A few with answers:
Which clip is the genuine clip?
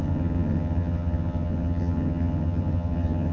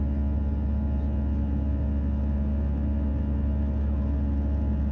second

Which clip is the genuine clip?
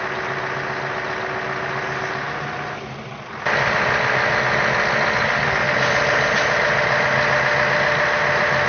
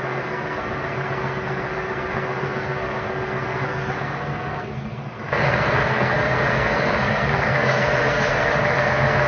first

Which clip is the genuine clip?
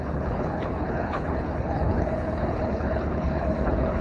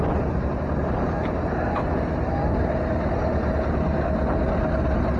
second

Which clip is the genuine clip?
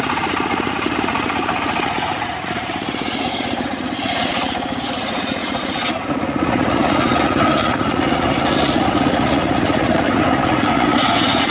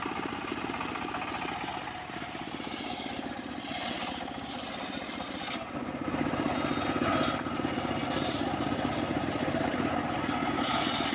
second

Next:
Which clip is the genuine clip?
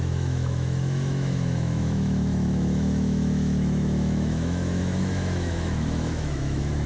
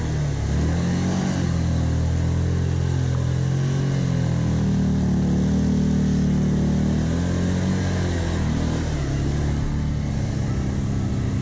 second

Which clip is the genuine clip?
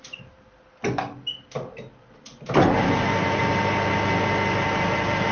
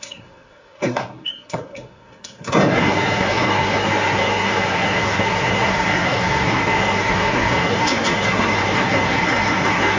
first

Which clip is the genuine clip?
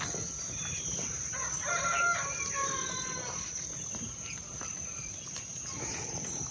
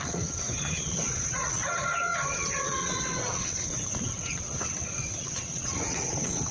first